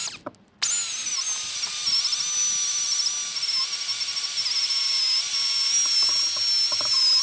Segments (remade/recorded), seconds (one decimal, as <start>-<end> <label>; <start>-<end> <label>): 0.0-7.2 recorded